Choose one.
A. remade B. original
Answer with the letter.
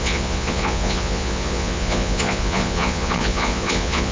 A